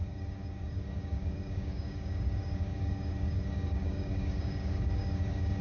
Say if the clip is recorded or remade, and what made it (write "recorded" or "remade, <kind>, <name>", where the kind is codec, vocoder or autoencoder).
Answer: remade, codec, DAC